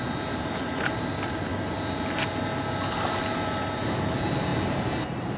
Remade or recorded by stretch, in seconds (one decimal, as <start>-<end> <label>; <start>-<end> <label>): 0.0-5.4 recorded